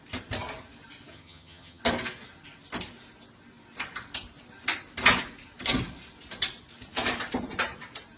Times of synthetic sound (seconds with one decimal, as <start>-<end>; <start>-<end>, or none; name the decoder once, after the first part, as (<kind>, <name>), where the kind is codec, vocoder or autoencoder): 1.1-1.8 (vocoder, HiFi-GAN)